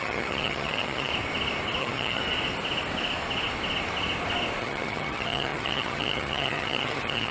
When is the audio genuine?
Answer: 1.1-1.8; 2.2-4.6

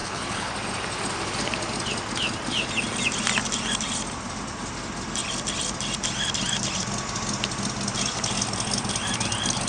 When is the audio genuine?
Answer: 0.5-9.7

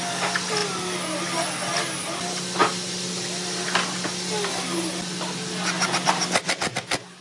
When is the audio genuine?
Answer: 0.0-7.2

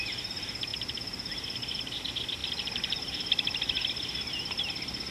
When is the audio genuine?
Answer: 0.0-5.1

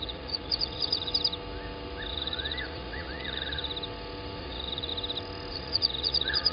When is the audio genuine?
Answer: 1.1-2.1; 3.7-4.4; 4.9-5.5

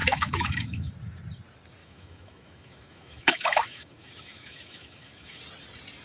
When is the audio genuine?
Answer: 0.9-1.8; 5.4-6.0